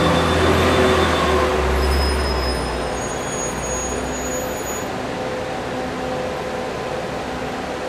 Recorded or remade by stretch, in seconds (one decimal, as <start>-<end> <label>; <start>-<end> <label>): 0.0-7.9 recorded